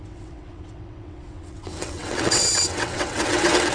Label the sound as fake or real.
fake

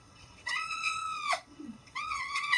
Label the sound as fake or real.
fake